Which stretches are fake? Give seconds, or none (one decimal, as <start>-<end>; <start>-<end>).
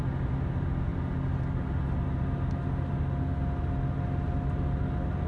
none